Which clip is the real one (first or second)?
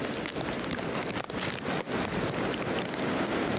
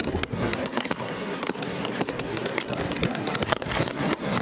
first